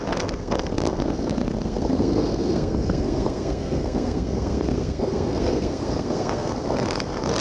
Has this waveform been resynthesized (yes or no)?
yes